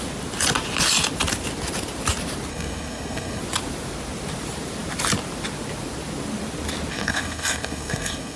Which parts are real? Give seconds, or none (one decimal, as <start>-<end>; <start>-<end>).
0.0-2.5; 3.4-6.9